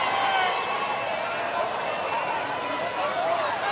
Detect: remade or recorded recorded